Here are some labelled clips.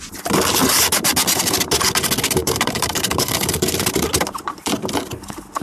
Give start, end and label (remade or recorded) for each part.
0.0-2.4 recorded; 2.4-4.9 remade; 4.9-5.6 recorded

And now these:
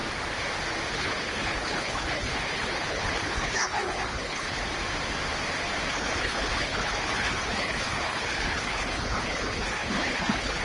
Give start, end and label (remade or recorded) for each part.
0.0-0.9 recorded; 0.9-4.6 remade; 4.6-5.9 recorded; 5.9-10.6 remade

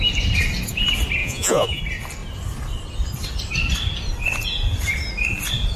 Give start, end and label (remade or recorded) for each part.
0.0-1.2 recorded; 1.2-1.8 remade; 1.8-5.8 recorded

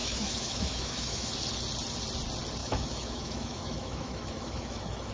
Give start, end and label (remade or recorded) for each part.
0.0-1.3 remade; 1.3-2.6 recorded; 2.6-5.1 remade